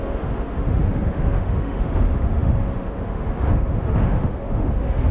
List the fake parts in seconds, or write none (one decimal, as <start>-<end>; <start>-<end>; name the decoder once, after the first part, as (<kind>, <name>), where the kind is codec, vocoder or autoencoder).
0.0-5.1 (autoencoder, DAC-VAE)